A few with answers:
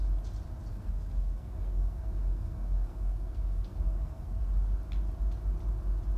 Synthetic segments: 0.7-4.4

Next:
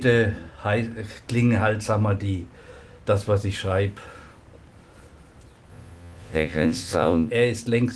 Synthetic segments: 5.7-7.3

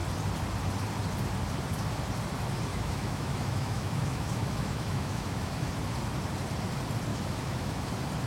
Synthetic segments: 2.7-5.7; 7.1-7.9

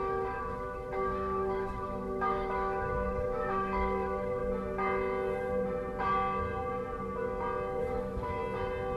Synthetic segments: 0.0-4.4; 7.8-8.4

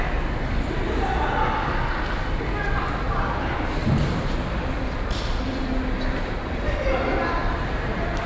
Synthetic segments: none

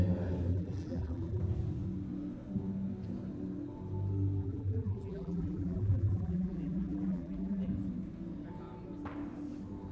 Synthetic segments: 0.5-1.4; 4.4-7.7